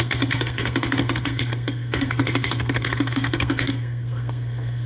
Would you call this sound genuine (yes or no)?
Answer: no